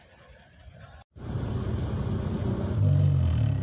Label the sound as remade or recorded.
recorded